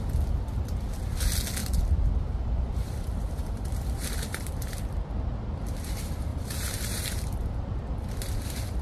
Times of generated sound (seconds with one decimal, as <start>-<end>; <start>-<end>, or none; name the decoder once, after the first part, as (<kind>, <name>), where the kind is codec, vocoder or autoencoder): 1.6-5.1 (vocoder, BigVGAN v2); 6.3-7.7